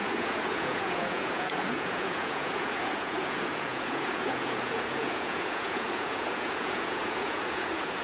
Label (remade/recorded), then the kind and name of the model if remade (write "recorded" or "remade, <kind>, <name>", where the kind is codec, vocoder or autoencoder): remade, vocoder, Vocos